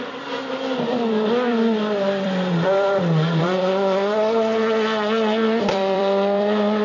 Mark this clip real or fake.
fake